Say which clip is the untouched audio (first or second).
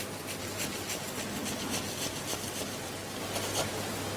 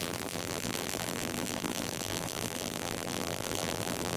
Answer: first